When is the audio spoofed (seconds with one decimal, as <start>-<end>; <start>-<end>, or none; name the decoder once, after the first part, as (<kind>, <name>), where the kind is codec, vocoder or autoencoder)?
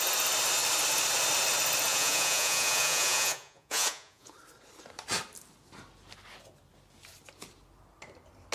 1.9-4.3 (vocoder, Vocos)